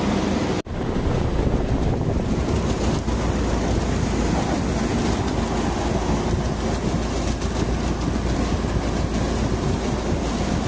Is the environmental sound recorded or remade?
recorded